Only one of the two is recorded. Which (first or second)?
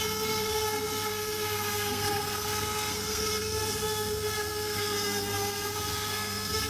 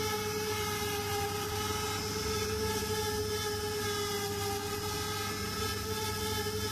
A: second